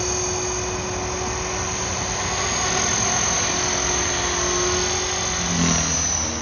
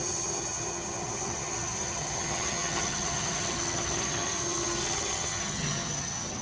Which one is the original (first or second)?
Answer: first